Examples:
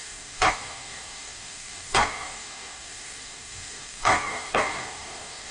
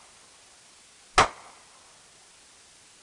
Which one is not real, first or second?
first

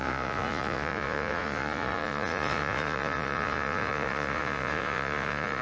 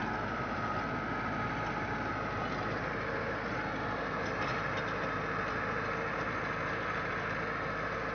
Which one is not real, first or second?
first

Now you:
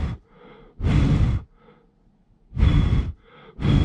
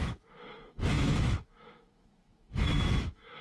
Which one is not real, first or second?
second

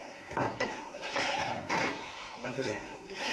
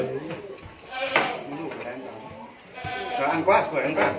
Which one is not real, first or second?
first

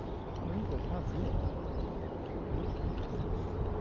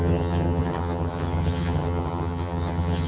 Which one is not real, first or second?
second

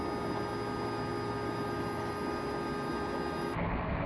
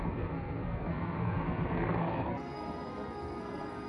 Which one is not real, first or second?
second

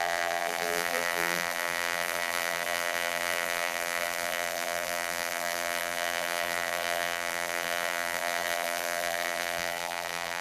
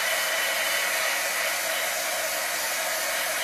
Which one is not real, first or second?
first